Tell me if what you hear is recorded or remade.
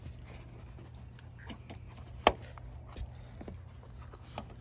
recorded